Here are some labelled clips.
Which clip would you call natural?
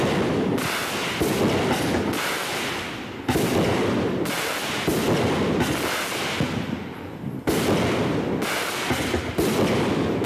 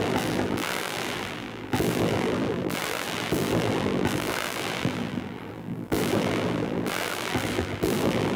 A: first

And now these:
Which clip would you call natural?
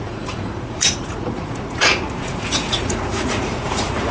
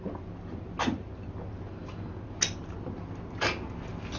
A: second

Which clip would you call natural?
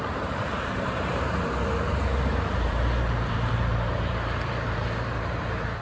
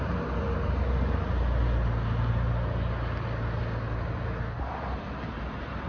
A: second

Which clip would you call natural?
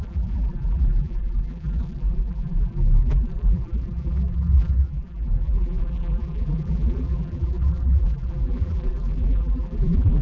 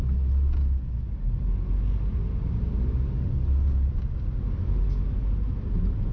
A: second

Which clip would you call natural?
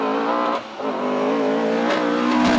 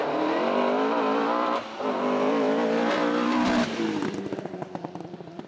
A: first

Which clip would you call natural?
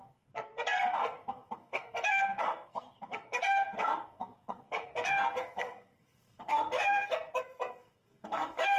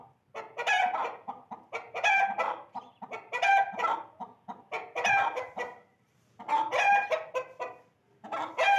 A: second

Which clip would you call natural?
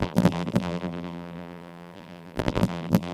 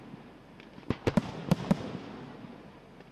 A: second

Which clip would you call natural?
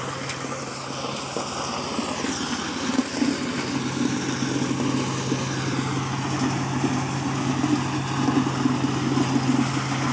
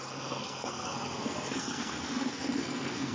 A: first